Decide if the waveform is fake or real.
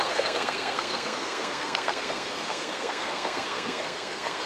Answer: fake